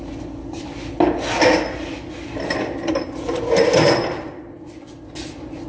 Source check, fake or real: real